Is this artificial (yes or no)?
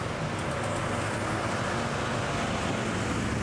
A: no